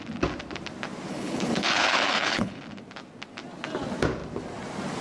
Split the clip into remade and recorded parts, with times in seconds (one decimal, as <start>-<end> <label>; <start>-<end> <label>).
0.0-1.1 recorded; 1.1-2.6 remade; 2.6-5.0 recorded